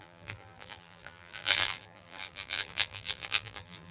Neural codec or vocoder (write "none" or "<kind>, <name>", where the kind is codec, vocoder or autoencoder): vocoder, BigVGAN v2